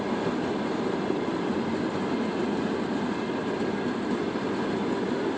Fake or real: real